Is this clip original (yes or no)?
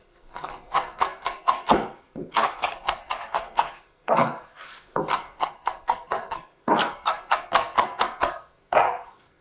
no